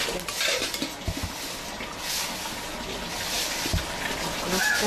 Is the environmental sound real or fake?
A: real